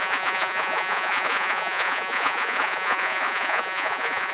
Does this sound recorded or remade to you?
remade